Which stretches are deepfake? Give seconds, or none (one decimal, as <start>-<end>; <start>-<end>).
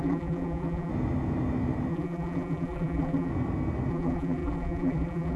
0.0-0.9; 1.9-3.3; 3.9-5.4